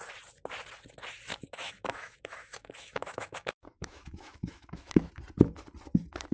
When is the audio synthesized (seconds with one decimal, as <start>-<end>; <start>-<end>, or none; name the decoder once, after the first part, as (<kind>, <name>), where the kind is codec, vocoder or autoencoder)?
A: 1.3-5.1 (autoencoder, DAC-VAE)

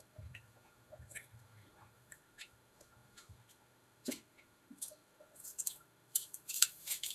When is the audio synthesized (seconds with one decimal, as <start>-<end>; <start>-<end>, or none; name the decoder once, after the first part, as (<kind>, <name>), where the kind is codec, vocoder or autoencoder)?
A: 0.0-7.1 (autoencoder, DAC-VAE)

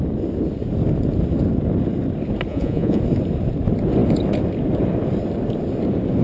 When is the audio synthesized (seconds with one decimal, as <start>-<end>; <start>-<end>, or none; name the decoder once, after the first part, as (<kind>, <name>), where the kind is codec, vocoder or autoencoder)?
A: 2.5-3.0 (vocoder, Vocos)

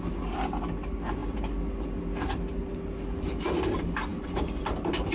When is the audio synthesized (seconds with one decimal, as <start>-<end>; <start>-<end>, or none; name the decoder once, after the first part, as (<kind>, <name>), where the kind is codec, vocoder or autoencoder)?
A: none

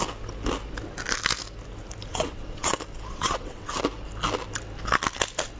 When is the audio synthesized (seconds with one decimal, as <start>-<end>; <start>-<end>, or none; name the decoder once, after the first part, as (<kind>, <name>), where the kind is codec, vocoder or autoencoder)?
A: 2.1-2.7 (vocoder, WaveNeXt); 3.1-3.8

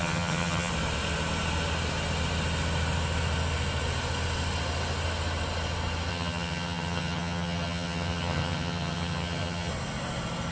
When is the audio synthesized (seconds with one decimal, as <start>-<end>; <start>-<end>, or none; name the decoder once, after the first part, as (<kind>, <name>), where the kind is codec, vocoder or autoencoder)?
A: 0.0-0.7 (vocoder, HiFi-GAN); 6.1-9.7

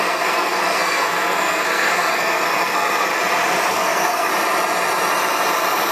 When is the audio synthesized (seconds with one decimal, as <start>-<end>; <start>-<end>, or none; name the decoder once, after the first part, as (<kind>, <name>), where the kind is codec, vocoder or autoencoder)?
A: 0.0-3.1 (codec, SNAC); 3.7-4.3

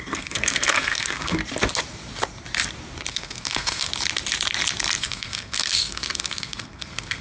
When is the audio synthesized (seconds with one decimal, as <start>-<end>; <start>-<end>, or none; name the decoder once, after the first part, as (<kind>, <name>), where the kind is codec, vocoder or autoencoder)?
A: 0.0-1.4 (codec, SNAC); 3.1-3.9; 5.0-7.2